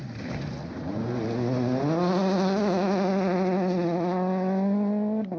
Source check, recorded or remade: recorded